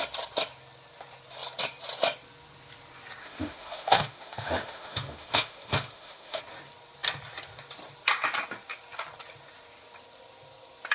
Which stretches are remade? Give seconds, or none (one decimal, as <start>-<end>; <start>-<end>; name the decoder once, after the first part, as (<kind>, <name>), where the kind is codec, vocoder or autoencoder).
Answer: 3.2-6.4 (autoencoder, DAC-VAE)